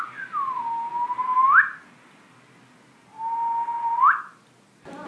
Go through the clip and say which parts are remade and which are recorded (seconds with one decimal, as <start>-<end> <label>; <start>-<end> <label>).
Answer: 0.0-5.1 recorded